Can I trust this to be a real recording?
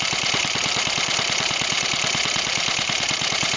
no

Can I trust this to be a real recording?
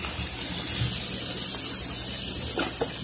yes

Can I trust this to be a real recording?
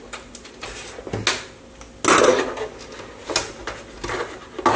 yes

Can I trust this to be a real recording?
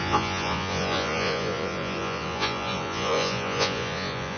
no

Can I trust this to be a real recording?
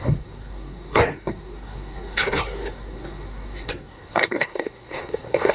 no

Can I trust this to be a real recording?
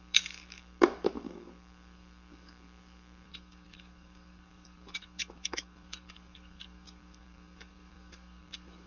no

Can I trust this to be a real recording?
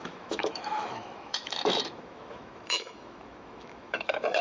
no